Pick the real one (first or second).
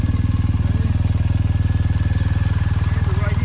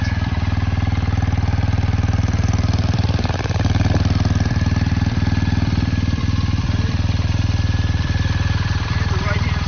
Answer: first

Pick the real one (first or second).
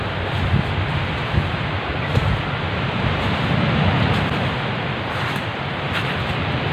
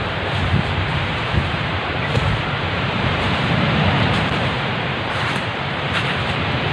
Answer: first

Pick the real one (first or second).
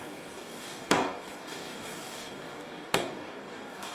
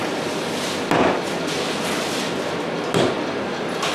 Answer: second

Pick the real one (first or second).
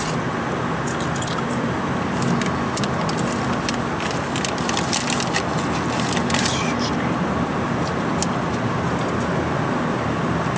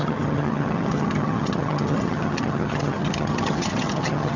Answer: first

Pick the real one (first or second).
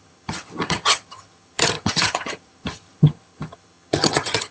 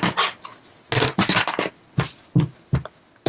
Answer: second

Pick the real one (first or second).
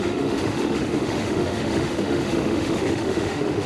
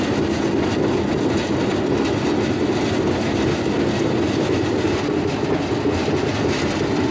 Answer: second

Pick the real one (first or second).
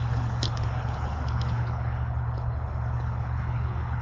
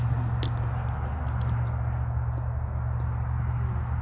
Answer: second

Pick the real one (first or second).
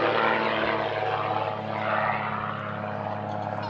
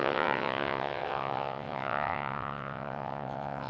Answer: first